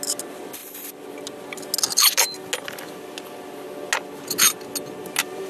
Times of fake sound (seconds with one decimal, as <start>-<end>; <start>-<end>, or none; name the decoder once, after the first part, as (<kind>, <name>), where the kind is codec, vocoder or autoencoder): none